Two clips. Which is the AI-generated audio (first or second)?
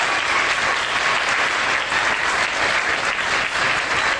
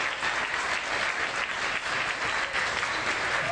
first